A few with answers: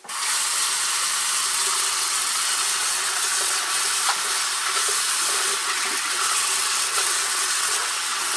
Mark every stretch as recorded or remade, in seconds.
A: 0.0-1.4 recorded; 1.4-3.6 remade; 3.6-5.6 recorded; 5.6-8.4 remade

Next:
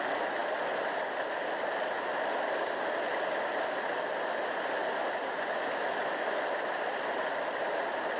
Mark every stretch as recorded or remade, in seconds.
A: 0.0-8.2 recorded